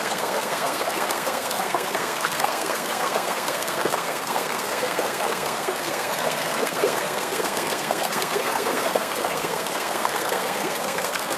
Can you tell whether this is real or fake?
fake